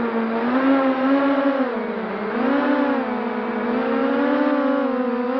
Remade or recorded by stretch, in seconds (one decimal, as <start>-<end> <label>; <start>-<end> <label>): 0.0-5.4 recorded